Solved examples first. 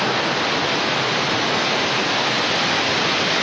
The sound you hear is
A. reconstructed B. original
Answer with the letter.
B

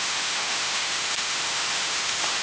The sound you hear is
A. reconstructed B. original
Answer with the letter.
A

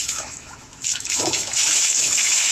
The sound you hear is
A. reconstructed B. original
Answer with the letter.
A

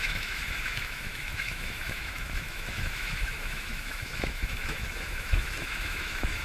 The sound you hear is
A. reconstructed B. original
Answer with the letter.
A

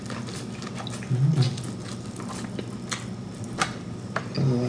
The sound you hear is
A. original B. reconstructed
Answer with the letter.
A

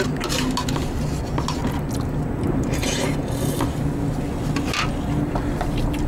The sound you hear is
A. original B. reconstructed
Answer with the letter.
A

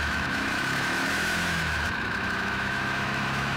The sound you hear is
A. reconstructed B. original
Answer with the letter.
A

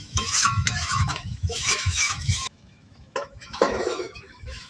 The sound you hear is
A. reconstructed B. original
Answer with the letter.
A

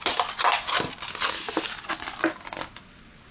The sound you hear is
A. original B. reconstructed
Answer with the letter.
A